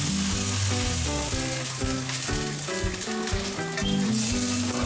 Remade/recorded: recorded